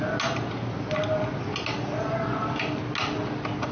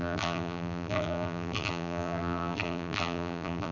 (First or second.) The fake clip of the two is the second